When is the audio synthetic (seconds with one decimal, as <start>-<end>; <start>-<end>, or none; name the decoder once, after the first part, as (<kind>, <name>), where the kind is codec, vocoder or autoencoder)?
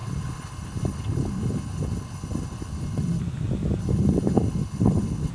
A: 0.0-3.2 (codec, HILCodec); 3.8-5.3